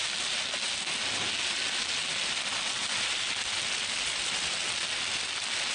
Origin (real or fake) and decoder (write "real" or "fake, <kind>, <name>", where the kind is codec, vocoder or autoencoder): real